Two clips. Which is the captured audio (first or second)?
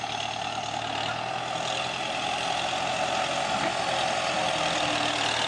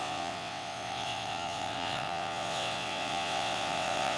first